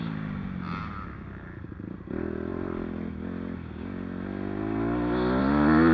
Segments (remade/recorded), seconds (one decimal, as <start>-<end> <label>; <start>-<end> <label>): 0.0-5.9 recorded